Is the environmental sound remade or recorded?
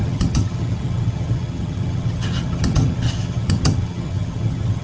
remade